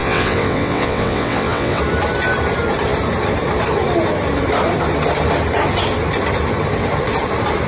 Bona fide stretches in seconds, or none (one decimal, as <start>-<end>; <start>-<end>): 1.8-7.7